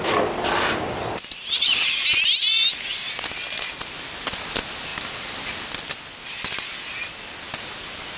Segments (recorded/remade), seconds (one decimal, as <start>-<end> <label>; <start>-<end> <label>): 0.0-8.2 recorded